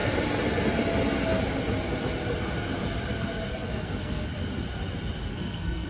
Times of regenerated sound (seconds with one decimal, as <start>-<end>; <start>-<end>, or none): 3.5-4.3; 5.3-5.9